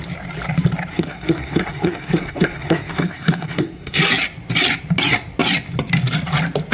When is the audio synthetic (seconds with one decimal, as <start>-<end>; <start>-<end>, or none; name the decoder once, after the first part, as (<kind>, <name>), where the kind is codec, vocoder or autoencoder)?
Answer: 0.9-4.0 (codec, SNAC)